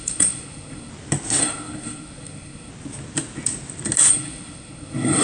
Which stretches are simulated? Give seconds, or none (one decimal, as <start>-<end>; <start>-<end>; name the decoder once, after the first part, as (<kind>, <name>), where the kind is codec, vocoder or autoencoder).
0.0-0.9 (codec, SNAC); 1.4-2.7; 4.1-5.2